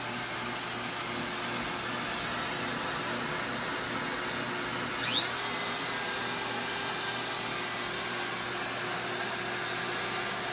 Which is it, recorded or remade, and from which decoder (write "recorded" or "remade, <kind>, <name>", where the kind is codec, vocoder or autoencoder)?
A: recorded